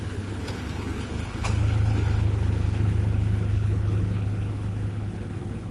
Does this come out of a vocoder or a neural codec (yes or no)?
yes